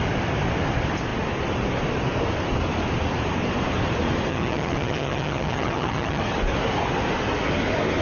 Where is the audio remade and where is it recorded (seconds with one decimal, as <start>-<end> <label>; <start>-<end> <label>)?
0.0-4.3 recorded; 4.3-6.2 remade; 6.2-8.0 recorded

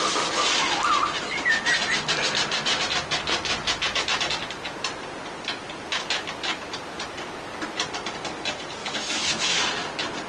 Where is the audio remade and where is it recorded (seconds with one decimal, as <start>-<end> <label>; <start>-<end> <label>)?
0.0-8.8 recorded; 8.8-9.6 remade; 9.6-10.3 recorded